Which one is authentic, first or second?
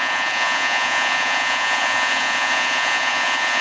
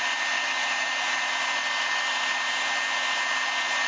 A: second